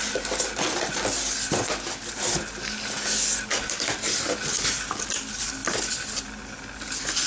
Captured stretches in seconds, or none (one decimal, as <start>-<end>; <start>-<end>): 0.0-7.3